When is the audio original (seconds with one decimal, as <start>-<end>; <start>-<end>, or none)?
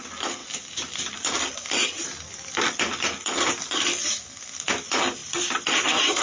0.0-5.2